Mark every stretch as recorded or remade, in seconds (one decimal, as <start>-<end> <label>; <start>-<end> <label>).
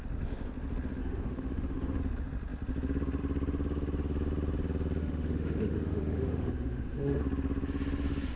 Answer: 0.0-1.0 recorded; 1.0-2.0 remade; 2.0-5.0 recorded; 5.0-7.2 remade; 7.2-8.4 recorded